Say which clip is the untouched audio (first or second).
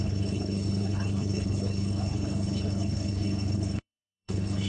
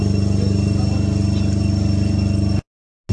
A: second